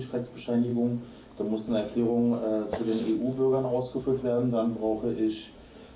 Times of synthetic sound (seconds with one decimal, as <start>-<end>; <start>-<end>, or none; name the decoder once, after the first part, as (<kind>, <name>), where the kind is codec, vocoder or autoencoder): 0.0-6.0 (autoencoder, DAC-VAE)